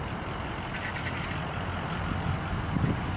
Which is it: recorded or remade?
recorded